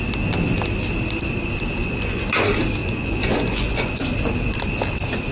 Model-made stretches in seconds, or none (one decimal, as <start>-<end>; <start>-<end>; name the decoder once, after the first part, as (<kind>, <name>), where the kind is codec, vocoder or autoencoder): 1.8-2.3 (vocoder, Vocos); 2.8-4.0